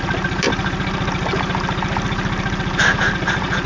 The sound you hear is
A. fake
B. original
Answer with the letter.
B